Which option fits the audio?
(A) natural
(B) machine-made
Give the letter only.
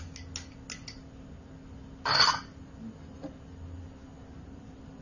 A